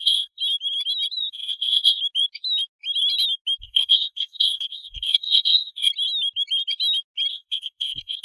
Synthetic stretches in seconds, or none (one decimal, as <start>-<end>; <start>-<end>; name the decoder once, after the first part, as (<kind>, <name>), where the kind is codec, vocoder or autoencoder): 0.0-0.4 (codec, SNAC); 1.3-2.0; 3.6-5.9; 7.3-8.2